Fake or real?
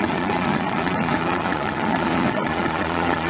fake